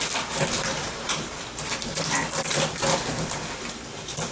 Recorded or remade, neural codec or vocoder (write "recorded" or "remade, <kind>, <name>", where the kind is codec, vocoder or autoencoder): recorded